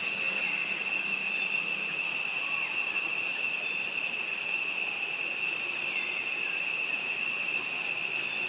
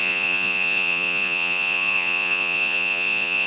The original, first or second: first